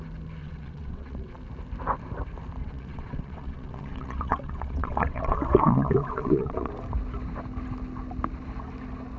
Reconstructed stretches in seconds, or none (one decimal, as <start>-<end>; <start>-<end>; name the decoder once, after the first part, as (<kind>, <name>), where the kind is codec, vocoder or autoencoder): 0.4-1.3 (vocoder, WaveNeXt); 2.6-6.7